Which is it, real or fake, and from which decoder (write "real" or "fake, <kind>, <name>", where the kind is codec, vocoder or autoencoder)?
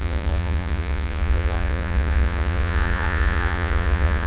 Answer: fake, vocoder, Vocos